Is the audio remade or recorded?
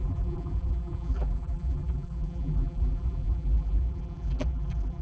remade